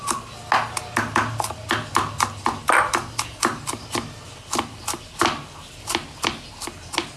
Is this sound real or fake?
real